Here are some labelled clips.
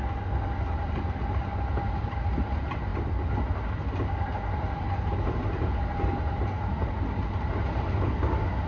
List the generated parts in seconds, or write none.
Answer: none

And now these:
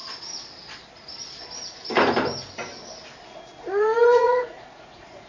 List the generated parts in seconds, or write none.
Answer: 3.2-5.3

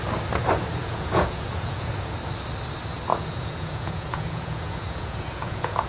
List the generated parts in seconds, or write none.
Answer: 0.8-1.9; 3.1-5.9

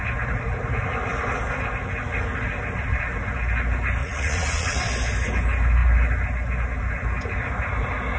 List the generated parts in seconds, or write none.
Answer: 4.0-4.8

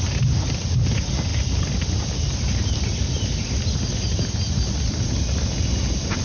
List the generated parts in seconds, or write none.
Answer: none

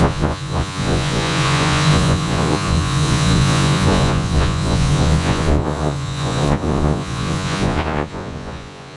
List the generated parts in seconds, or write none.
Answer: 0.0-9.0